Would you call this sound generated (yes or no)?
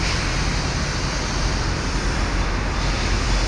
yes